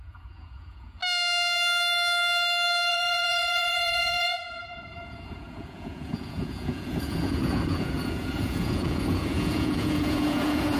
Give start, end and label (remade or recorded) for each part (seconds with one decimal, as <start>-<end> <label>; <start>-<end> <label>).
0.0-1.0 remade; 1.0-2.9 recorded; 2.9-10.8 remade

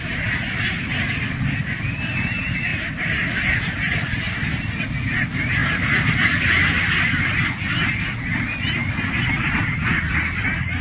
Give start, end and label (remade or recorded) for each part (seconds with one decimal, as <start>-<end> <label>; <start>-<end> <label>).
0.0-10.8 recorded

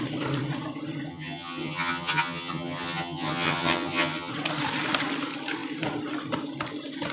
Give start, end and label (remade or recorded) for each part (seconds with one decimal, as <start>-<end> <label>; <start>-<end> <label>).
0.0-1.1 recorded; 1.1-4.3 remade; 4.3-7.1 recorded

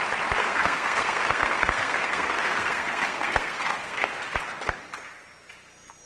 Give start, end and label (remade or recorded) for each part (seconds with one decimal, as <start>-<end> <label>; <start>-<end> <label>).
0.0-0.4 recorded; 0.4-4.1 remade; 4.1-6.1 recorded